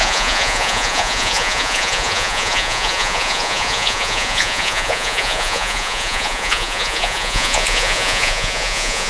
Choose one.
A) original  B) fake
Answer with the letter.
B